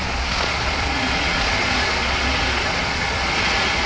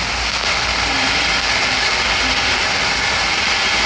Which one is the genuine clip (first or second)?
second